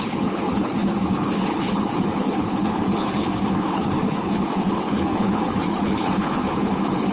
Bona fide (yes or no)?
no